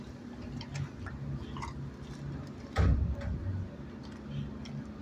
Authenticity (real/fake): real